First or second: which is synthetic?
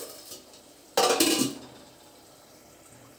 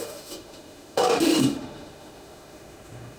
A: second